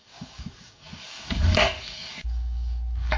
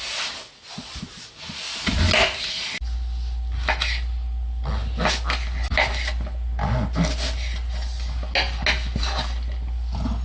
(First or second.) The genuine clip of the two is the second